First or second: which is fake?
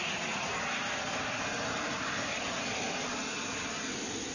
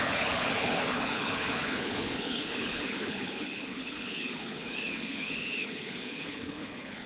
second